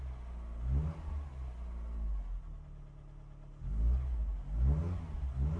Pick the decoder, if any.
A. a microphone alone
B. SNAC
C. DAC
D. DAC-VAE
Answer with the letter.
A